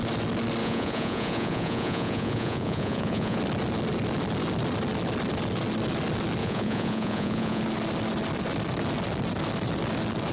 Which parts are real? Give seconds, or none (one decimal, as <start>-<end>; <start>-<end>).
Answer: 0.0-0.6; 3.4-6.4; 7.6-10.3